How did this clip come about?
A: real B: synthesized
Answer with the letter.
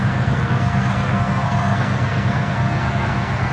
B